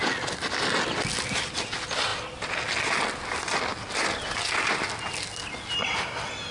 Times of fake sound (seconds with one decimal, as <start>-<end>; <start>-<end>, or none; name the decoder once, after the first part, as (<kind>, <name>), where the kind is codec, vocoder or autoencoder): none